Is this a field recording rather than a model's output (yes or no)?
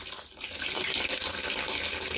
yes